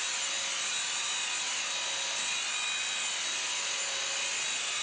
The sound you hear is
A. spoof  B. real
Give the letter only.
B